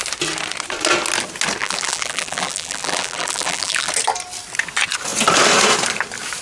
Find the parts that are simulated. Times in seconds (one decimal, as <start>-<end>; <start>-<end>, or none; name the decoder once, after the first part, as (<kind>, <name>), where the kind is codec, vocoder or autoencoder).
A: 1.6-3.9 (vocoder, BigVGAN v2)